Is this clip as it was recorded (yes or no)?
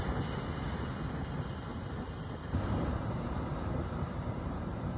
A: no